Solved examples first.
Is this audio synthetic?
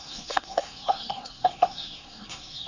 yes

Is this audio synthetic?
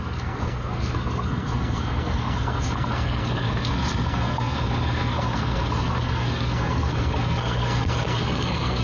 yes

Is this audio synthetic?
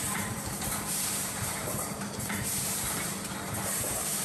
yes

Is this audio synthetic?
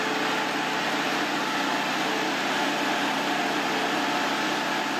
no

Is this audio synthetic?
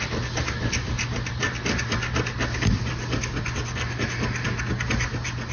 no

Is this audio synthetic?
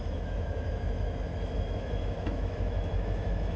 yes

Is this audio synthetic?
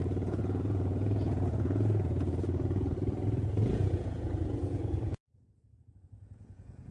yes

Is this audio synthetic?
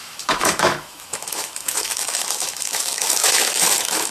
yes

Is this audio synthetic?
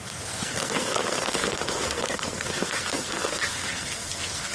yes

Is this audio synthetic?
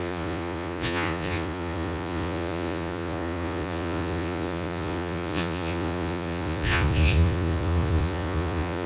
yes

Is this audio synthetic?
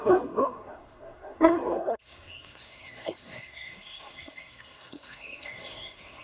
yes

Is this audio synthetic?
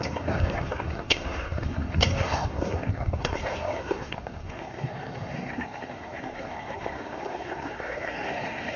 yes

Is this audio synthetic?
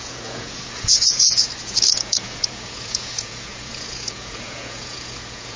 yes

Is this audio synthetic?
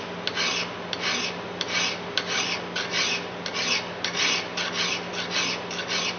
no